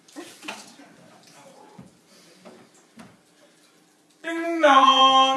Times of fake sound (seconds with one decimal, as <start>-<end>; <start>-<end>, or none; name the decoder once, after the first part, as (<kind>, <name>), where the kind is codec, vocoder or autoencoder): 4.2-5.0 (vocoder, BigVGAN v2)